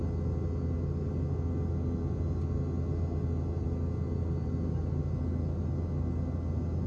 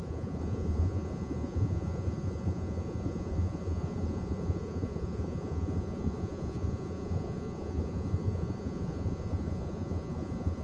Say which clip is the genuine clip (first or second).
first